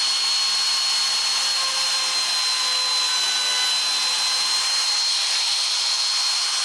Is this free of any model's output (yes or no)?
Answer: yes